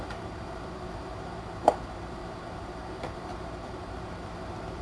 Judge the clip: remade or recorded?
remade